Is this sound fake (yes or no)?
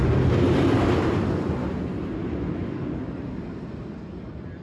no